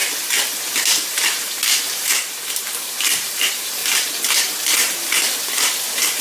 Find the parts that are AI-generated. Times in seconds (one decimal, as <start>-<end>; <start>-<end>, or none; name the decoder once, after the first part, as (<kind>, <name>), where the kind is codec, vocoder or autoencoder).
0.6-3.8 (vocoder, BigVGAN v2); 5.8-6.2